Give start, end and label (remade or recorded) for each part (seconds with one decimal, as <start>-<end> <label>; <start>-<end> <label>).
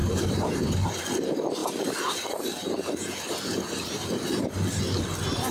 0.0-1.0 remade; 1.0-1.6 recorded; 1.6-4.8 remade; 4.8-5.5 recorded